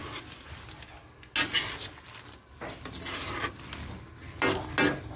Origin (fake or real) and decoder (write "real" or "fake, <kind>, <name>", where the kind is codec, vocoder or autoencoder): real